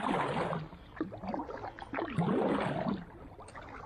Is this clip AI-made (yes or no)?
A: no